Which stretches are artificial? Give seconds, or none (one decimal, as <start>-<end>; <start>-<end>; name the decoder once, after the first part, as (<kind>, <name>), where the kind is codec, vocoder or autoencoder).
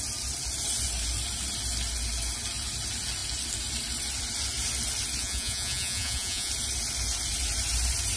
5.2-6.5 (vocoder, Vocos)